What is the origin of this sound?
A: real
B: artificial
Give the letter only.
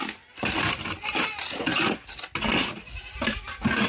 A